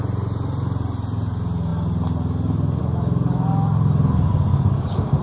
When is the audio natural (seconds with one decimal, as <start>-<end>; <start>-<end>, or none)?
0.0-4.5